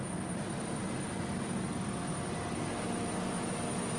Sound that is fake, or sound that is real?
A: real